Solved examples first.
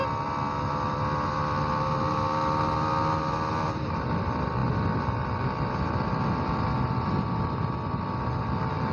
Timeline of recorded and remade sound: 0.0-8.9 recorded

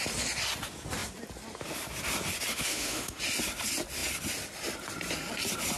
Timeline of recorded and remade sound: 0.0-2.5 recorded; 2.5-3.2 remade; 3.2-5.8 recorded

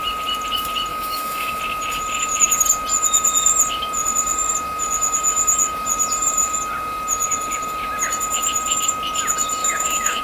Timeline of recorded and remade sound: 0.0-0.9 recorded; 0.9-1.6 remade; 1.6-9.6 recorded; 9.6-10.2 remade